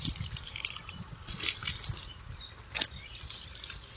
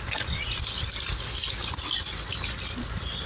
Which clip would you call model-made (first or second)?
first